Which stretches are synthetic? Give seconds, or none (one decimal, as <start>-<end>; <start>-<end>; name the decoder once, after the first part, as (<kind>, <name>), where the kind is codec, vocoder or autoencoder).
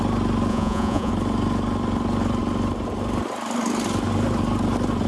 0.5-1.1 (vocoder, Vocos)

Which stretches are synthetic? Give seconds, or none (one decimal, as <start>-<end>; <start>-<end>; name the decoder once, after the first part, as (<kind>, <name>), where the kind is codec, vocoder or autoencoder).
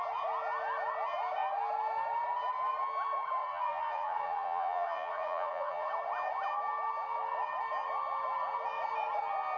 3.4-5.9 (vocoder, Vocos)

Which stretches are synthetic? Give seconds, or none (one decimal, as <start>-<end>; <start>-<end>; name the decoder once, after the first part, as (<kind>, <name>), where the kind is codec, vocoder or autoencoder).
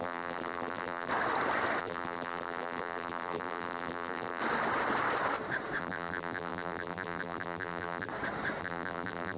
0.0-1.1 (vocoder, BigVGAN v2); 1.8-4.4; 5.8-8.1; 8.6-9.4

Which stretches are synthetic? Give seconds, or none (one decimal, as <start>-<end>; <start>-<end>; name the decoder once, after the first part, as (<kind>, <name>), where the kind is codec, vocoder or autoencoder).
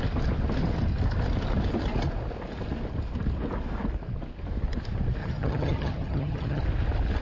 5.2-6.6 (vocoder, HiFi-GAN)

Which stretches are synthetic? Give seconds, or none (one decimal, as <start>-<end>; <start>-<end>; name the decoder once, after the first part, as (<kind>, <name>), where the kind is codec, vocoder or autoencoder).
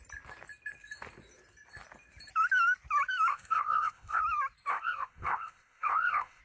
3.3-4.2 (codec, ZipCodec); 4.7-6.4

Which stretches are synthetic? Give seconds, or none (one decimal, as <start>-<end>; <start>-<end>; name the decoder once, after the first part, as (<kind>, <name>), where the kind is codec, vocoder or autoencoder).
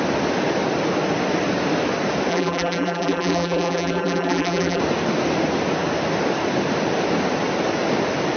2.3-4.8 (vocoder, BigVGAN v2)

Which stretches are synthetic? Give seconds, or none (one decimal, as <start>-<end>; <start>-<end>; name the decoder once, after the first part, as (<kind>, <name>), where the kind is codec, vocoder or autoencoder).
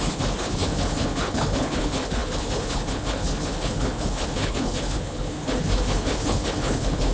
0.0-7.1 (codec, HILCodec)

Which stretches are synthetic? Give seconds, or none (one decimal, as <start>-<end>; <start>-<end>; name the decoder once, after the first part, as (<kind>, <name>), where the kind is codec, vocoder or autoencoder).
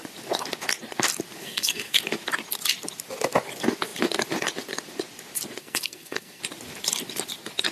1.4-2.0 (codec, SNAC); 5.6-6.4